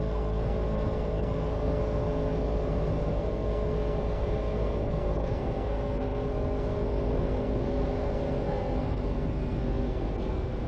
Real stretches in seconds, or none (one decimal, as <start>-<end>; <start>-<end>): none